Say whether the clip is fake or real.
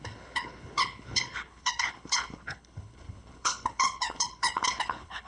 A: fake